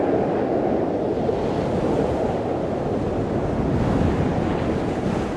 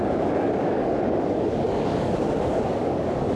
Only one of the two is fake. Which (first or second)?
second